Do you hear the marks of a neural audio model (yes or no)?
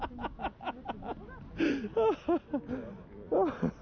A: no